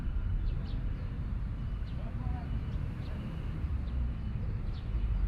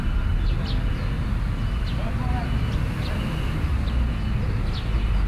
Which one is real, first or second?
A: second